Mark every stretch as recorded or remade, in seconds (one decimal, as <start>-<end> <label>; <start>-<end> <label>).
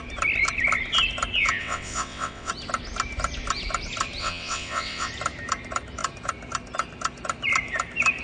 0.0-1.6 recorded; 1.6-2.5 remade; 2.5-4.2 recorded; 4.2-5.1 remade; 5.1-8.2 recorded